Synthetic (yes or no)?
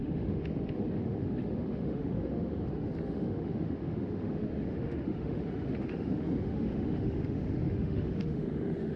yes